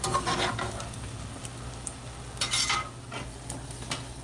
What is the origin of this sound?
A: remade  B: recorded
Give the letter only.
B